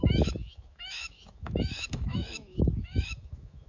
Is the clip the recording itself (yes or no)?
no